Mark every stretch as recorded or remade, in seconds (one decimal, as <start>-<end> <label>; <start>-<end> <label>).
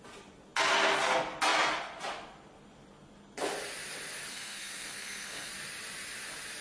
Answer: 0.0-4.3 recorded; 4.3-5.5 remade; 5.5-6.6 recorded